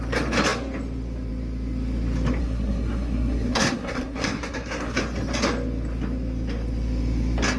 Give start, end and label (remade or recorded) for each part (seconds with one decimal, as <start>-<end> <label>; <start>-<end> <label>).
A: 0.0-2.4 recorded; 2.4-5.0 remade; 5.0-7.6 recorded

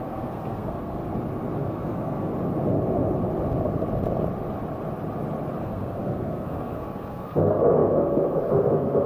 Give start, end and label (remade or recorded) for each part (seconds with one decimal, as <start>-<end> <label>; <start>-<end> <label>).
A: 0.0-1.0 remade; 1.0-1.6 recorded; 1.6-2.3 remade; 2.3-5.6 recorded; 5.6-9.1 remade

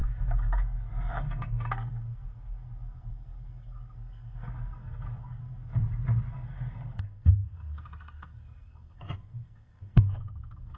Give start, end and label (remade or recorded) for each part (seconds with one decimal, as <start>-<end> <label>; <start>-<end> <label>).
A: 0.0-5.7 remade; 5.7-6.3 recorded; 6.3-10.8 remade

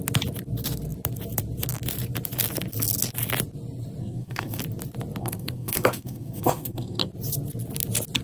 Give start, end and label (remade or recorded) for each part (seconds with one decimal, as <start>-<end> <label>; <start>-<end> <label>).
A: 0.0-4.0 recorded; 4.0-4.6 remade; 4.6-5.2 recorded; 5.2-7.1 remade; 7.1-8.2 recorded